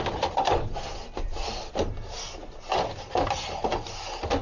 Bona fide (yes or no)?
yes